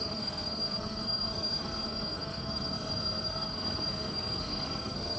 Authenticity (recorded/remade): remade